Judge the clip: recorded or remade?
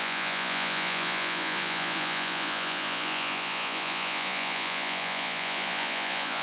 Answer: remade